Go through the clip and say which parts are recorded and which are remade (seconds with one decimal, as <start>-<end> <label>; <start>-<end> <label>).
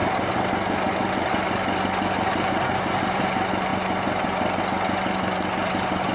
0.0-3.7 recorded; 3.7-4.6 remade; 4.6-6.1 recorded